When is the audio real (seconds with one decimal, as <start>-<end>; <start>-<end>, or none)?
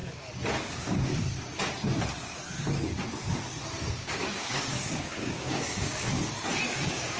0.0-0.7; 1.1-3.9; 6.1-6.7